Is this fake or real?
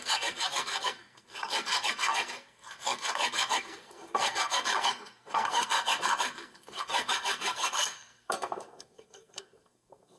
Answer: fake